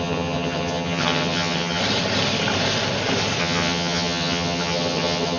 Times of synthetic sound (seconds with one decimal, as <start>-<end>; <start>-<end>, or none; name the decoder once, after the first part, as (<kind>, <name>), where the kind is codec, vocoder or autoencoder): 0.0-1.8 (vocoder, HiFi-GAN); 3.4-5.4